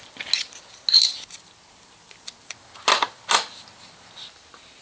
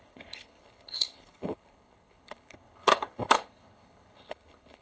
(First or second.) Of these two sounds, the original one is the first